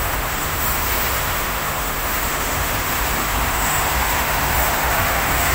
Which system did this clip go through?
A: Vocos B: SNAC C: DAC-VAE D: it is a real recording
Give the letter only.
C